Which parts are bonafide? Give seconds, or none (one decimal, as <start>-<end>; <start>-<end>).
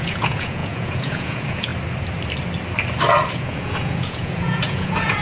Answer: 1.7-3.3